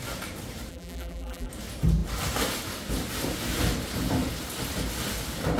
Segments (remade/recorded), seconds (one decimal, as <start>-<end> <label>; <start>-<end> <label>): 0.0-0.7 recorded; 0.7-1.5 remade; 1.5-5.6 recorded